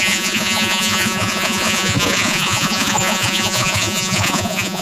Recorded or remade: remade